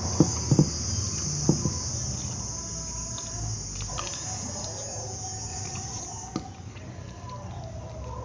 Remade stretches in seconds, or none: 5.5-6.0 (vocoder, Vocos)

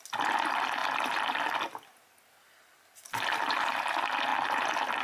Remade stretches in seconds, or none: none